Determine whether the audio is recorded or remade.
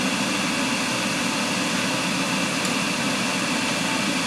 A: recorded